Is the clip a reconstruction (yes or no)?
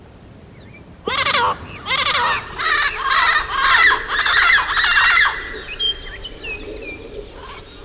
yes